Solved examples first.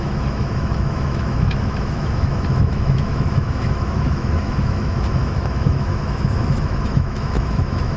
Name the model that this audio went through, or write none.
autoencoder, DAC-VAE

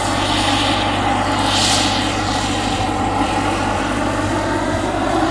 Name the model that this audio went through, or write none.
none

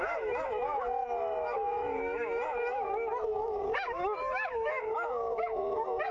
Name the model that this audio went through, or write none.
autoencoder, DAC-VAE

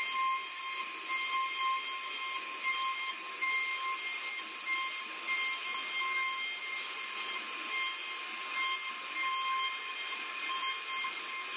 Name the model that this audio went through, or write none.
none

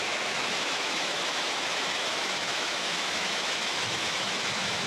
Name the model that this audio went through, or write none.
autoencoder, DAC-VAE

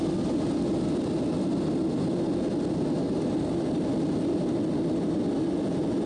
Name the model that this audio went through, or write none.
none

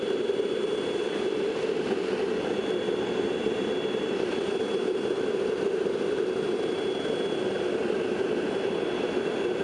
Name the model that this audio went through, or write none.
none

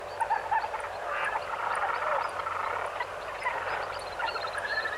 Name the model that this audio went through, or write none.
none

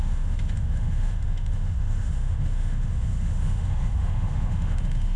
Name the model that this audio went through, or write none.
autoencoder, DAC-VAE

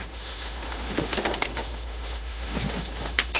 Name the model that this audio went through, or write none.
autoencoder, DAC-VAE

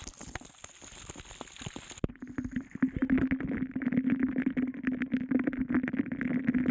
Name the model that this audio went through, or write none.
none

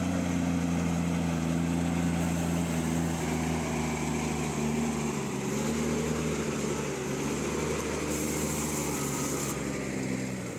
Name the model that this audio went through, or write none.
none